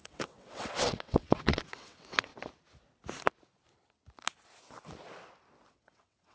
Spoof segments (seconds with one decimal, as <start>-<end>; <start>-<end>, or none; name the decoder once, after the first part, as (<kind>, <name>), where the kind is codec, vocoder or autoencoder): 0.0-2.3 (vocoder, WaveNeXt); 5.7-6.3